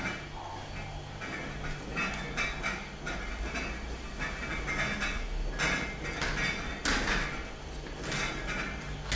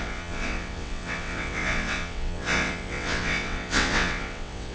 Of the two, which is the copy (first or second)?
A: second